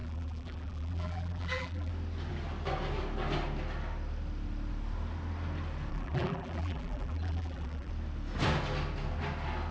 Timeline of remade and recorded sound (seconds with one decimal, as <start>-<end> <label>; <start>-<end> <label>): 0.0-1.9 remade; 1.9-5.9 recorded; 5.9-7.9 remade; 7.9-9.7 recorded